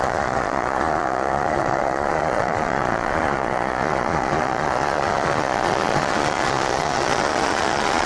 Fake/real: fake